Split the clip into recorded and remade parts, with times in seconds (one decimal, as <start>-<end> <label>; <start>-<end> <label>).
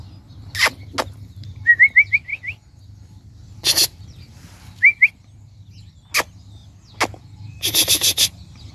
0.0-8.7 recorded